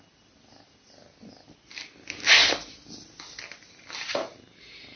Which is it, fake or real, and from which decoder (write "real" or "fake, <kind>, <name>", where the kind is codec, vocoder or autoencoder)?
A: real